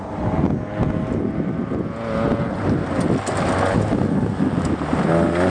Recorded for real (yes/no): yes